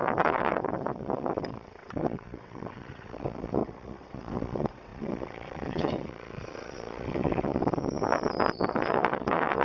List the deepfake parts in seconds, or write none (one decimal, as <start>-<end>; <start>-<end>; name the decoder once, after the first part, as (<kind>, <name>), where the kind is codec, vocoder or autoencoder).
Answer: 0.0-9.6 (vocoder, WaveNeXt)